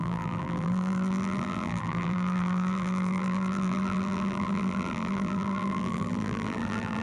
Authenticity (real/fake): fake